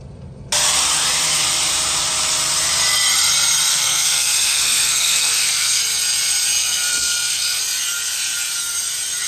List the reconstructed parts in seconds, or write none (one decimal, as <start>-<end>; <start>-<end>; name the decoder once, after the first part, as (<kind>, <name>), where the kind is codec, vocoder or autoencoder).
3.7-5.8 (codec, SNAC); 6.6-7.6